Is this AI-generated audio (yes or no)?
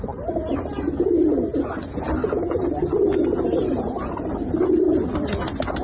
no